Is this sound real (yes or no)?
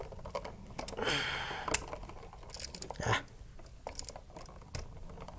yes